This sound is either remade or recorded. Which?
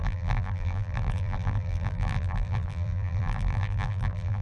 remade